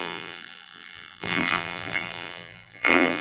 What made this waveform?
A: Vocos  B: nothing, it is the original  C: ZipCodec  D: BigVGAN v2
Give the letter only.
D